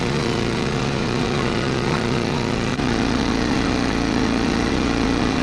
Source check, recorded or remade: remade